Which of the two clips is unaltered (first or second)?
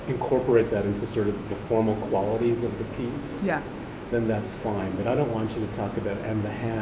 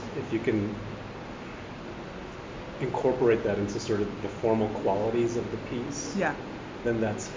second